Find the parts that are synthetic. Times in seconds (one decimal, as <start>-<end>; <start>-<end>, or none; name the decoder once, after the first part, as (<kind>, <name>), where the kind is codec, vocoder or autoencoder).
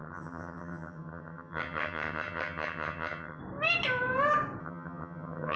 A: 0.0-3.4 (vocoder, HiFi-GAN); 4.6-5.6